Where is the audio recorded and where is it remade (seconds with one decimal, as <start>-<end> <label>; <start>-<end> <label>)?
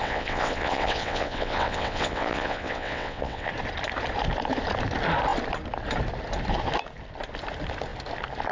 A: 0.0-3.5 remade; 3.5-8.5 recorded